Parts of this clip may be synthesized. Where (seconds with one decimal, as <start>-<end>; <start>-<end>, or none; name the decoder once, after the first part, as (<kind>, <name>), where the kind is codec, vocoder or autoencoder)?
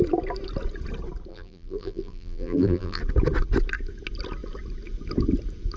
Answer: 1.3-3.0 (vocoder, BigVGAN v2)